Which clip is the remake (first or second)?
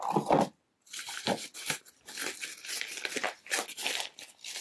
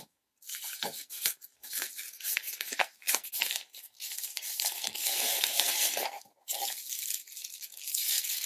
second